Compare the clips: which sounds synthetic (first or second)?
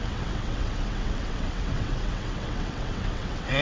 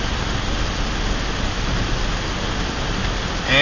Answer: first